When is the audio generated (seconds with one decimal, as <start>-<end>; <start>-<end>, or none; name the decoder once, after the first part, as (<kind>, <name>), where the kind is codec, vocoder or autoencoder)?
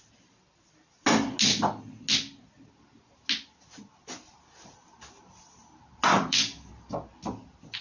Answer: 6.1-6.7 (codec, DAC)